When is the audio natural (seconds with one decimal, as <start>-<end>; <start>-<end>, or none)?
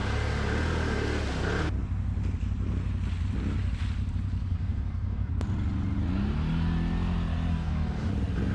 0.0-4.5; 5.3-7.5; 8.1-8.5